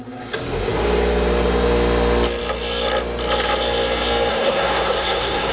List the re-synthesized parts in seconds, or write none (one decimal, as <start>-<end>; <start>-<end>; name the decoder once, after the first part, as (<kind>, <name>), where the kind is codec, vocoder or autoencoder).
4.3-5.5 (codec, SNAC)

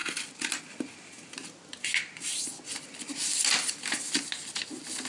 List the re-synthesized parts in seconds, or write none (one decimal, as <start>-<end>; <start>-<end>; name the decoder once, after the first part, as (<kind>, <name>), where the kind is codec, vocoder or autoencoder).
none

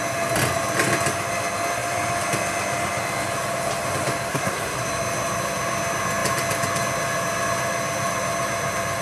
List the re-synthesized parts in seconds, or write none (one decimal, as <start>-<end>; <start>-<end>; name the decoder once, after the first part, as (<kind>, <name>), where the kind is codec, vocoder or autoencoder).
4.3-4.9 (codec, SNAC)

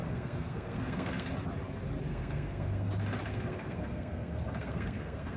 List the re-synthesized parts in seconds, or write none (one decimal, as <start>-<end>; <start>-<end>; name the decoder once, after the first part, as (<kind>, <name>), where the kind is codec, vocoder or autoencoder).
0.0-1.3 (codec, SNAC); 2.1-2.9; 3.3-5.4

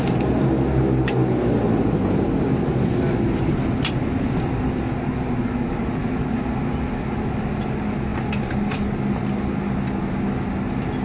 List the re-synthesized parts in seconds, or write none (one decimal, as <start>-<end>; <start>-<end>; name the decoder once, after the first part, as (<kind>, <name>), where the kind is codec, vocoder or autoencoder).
none